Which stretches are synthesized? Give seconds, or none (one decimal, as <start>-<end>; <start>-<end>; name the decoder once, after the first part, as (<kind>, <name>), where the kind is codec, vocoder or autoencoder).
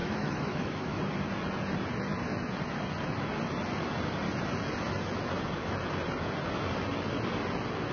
0.0-1.0 (autoencoder, DAC-VAE)